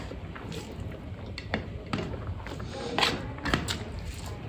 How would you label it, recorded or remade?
recorded